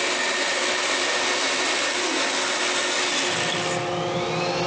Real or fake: real